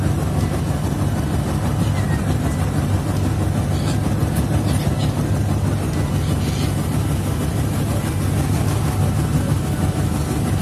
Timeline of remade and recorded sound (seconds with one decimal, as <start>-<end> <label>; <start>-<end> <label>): 0.0-10.6 recorded